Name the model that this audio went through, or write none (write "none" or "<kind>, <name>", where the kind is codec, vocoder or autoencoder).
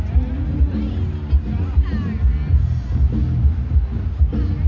none